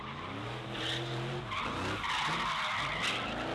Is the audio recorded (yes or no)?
yes